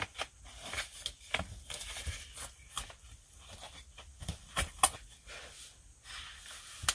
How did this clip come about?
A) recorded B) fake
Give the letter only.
A